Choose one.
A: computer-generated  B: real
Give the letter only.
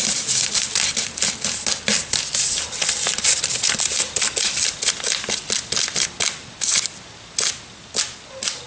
B